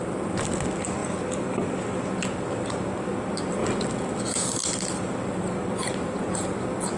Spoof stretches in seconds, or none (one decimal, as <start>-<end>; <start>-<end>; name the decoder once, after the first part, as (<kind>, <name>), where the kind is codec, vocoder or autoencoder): none